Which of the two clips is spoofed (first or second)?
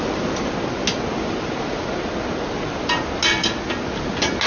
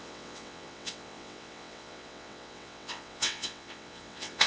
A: second